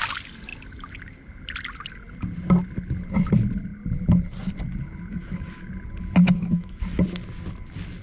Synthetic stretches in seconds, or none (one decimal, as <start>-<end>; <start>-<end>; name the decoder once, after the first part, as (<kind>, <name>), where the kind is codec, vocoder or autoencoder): 5.1-5.7 (autoencoder, DAC-VAE); 6.2-6.8